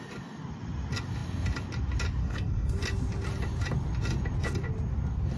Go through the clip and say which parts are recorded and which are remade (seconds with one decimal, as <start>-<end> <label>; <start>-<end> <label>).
0.0-2.2 recorded; 2.2-2.8 remade; 2.8-5.4 recorded